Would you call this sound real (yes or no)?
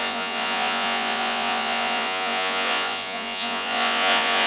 no